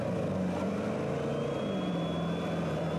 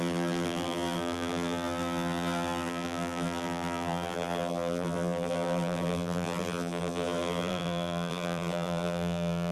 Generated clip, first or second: second